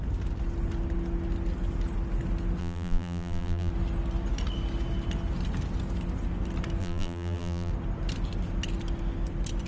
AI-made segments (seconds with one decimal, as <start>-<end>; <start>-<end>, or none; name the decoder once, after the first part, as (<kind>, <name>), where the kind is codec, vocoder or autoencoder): 2.6-3.7 (vocoder, BigVGAN v2); 6.8-7.7